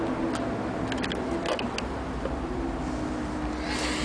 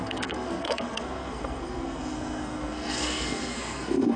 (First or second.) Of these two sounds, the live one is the first